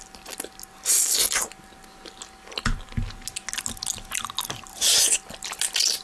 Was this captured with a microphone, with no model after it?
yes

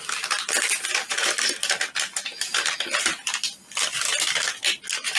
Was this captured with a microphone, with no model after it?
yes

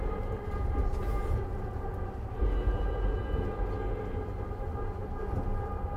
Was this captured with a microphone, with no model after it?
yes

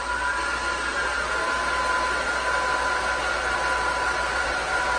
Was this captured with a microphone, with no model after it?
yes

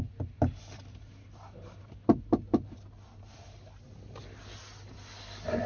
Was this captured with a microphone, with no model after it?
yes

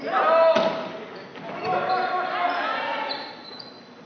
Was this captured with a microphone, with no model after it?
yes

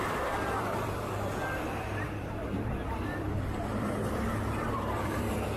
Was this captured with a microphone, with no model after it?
no